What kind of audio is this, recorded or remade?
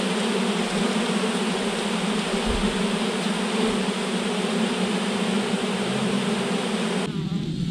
recorded